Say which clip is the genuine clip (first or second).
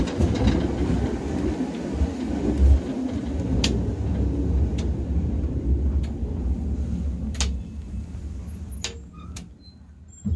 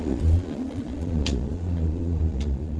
first